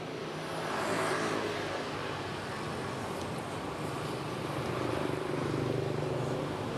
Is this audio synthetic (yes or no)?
no